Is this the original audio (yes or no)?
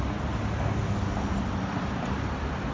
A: yes